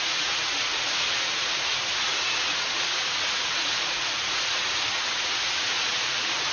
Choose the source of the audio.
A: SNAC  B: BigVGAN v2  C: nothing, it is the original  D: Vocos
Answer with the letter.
D